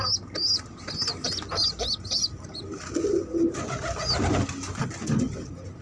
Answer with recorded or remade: recorded